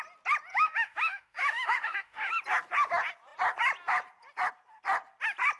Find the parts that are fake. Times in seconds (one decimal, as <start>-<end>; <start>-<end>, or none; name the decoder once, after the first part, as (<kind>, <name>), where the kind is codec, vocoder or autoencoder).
0.5-2.3 (autoencoder, DAC-VAE)